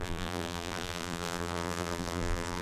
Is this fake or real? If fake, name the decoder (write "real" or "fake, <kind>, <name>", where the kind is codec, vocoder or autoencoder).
fake, vocoder, BigVGAN v2